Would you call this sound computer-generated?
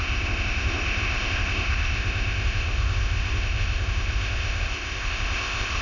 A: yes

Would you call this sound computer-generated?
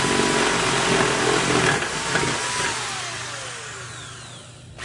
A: no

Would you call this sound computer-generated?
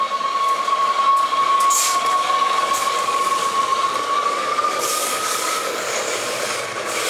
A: yes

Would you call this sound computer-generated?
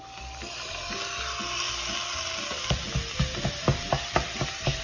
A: no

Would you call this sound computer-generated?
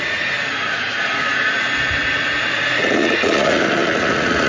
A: yes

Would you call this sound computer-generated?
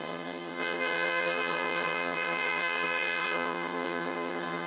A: yes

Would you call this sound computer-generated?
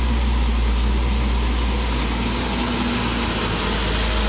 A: no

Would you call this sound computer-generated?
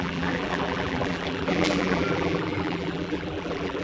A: yes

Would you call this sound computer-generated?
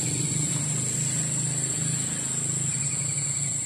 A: no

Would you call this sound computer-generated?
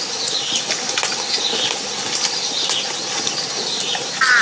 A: no